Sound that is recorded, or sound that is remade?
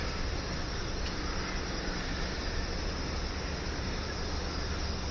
recorded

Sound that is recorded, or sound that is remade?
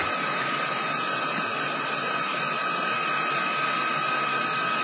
recorded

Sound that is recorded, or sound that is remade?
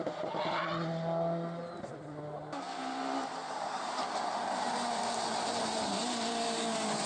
recorded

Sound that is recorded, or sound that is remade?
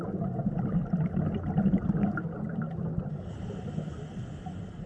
recorded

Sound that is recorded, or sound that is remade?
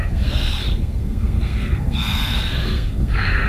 remade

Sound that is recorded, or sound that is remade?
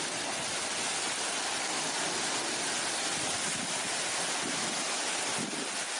recorded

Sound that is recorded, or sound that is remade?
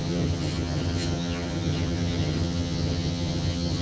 remade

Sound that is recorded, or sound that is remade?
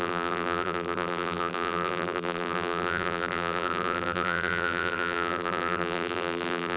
remade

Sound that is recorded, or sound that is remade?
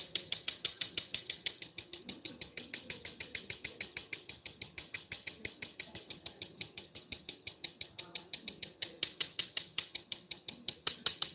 remade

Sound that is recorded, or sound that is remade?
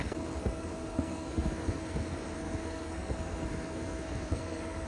remade